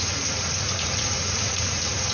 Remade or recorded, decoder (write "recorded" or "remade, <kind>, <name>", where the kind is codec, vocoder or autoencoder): remade, vocoder, Vocos